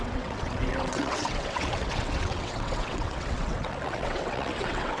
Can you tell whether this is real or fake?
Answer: fake